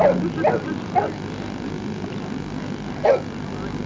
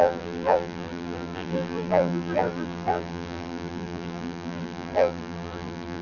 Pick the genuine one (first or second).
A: first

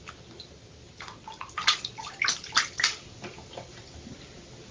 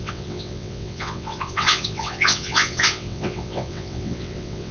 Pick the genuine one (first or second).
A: first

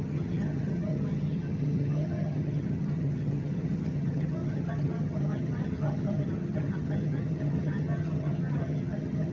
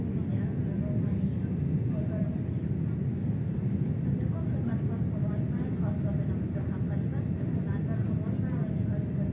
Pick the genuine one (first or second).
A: second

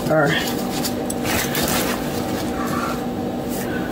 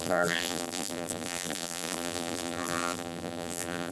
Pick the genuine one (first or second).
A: first